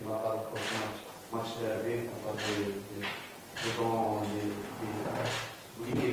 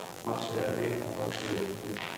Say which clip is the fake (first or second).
second